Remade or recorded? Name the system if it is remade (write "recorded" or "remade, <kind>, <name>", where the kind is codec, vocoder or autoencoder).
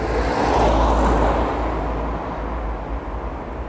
recorded